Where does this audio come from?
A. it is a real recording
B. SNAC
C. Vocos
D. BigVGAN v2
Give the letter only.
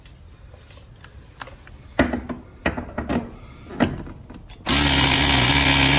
A